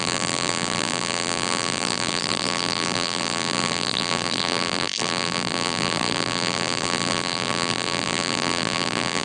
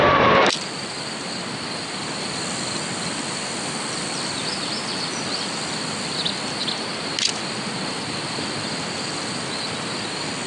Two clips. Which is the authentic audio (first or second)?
second